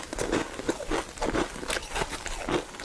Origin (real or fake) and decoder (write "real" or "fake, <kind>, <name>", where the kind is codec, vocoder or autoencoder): real